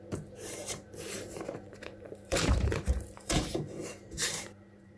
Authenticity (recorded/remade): remade